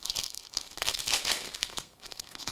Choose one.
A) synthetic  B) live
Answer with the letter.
A